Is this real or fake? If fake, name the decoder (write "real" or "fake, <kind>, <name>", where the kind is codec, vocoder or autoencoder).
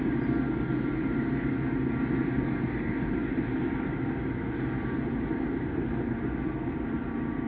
real